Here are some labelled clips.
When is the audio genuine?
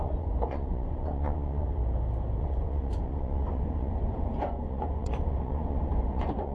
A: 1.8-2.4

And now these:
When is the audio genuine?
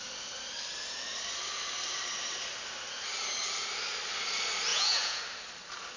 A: 0.0-4.7; 5.2-6.0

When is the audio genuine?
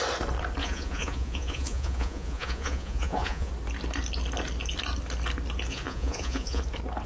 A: 0.0-0.6; 3.5-5.7; 6.6-7.1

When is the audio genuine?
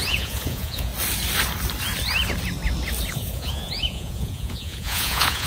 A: 0.9-3.1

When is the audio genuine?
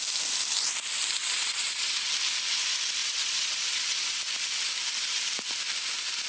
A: 0.0-1.2; 2.1-3.0; 4.2-6.3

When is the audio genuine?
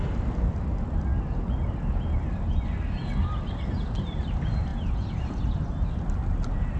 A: 0.0-4.7; 5.6-6.8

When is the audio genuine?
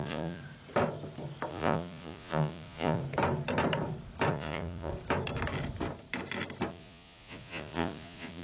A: 0.4-1.5; 3.0-4.3; 4.9-6.7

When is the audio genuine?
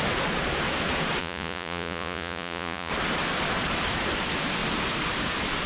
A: 0.0-1.2; 2.9-5.7